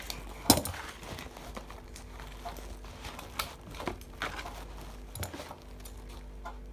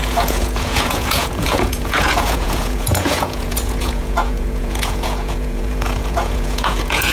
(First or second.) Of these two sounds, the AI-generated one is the second